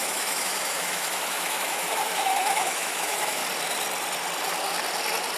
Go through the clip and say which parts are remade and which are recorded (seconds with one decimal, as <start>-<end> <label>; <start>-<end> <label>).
0.0-3.4 remade; 3.4-5.4 recorded